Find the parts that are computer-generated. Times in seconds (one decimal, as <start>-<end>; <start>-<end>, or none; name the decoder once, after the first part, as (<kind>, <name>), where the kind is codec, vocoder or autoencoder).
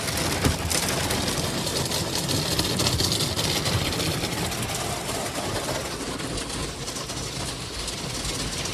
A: none